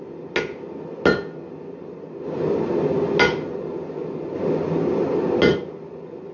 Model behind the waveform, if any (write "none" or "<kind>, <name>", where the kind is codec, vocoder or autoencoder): none